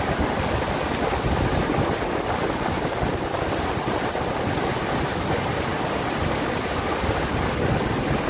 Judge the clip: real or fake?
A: real